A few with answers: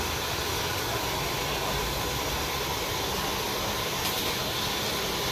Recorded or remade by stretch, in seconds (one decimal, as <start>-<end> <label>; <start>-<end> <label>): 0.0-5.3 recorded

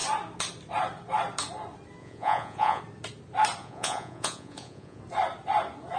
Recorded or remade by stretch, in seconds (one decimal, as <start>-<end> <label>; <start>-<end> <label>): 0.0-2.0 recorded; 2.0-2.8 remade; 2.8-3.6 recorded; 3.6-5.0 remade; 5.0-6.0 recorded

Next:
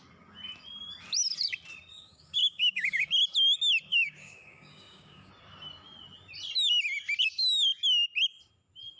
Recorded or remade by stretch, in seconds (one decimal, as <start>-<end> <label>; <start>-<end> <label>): 0.0-1.9 recorded; 1.9-3.1 remade; 3.1-3.9 recorded; 3.9-5.3 remade; 5.3-9.0 recorded